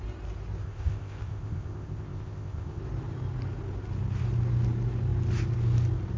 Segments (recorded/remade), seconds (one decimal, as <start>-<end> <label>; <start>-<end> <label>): 0.0-0.6 recorded; 0.6-2.8 remade; 2.8-6.2 recorded